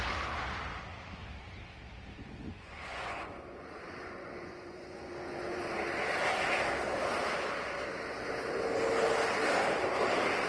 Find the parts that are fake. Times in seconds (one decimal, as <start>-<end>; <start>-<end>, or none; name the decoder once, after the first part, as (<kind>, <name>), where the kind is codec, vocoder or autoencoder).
2.2-5.7 (vocoder, Vocos)